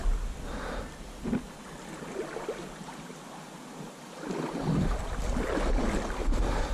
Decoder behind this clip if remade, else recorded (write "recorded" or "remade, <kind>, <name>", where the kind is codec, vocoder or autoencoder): recorded